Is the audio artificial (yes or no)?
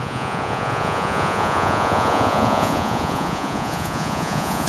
yes